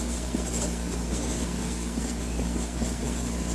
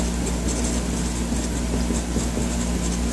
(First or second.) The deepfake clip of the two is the first